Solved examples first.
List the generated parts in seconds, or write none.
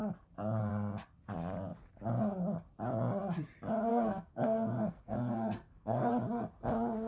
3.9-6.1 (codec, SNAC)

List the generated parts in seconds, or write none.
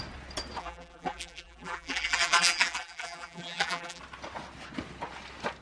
0.6-4.0 (vocoder, BigVGAN v2)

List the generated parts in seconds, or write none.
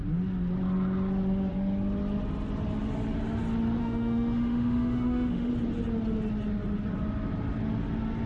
3.8-5.5 (autoencoder, DAC-VAE)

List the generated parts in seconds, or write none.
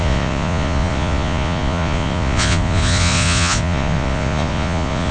0.0-5.1 (vocoder, Vocos)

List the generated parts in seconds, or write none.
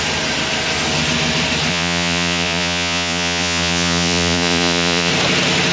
1.7-5.1 (vocoder, Vocos)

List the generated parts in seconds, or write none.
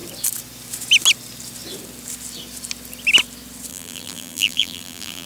3.7-5.3 (vocoder, BigVGAN v2)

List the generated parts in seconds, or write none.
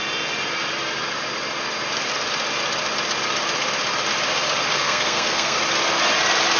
4.6-5.6 (codec, SNAC)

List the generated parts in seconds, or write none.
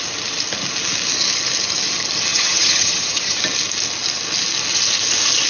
2.3-3.4 (vocoder, HiFi-GAN)